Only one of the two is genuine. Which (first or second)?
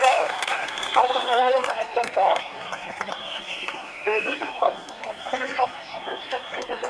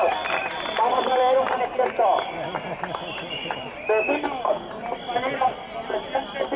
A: second